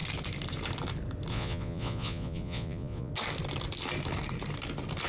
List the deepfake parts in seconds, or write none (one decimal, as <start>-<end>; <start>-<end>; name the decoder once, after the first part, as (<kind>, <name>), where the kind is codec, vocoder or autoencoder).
1.3-3.1 (vocoder, Vocos)